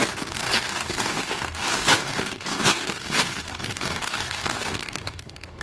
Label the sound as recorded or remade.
remade